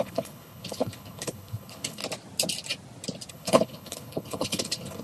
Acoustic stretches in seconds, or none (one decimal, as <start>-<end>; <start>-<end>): 2.0-3.3